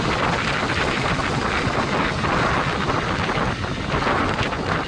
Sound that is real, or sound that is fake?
real